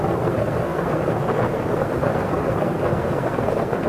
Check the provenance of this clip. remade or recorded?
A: remade